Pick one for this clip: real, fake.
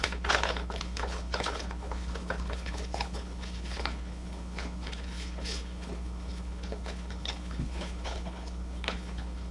fake